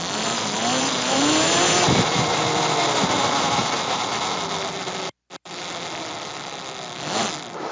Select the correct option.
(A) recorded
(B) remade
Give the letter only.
A